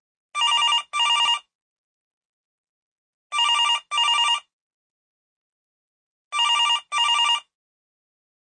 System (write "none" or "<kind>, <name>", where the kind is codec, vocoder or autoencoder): none